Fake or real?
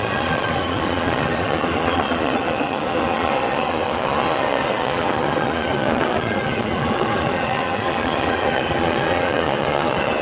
fake